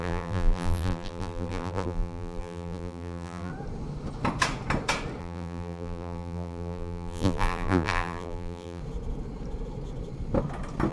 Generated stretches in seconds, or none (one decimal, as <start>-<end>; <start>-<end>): 0.0-3.5; 5.2-8.8